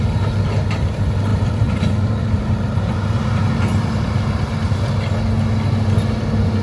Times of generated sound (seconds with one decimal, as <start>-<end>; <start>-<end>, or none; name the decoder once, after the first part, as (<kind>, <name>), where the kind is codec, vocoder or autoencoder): 1.3-4.9 (vocoder, BigVGAN v2)